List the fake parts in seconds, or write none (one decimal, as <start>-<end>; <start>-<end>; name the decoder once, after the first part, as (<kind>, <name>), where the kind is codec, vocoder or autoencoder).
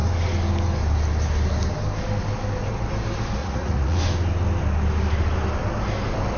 3.4-4.0 (vocoder, Vocos)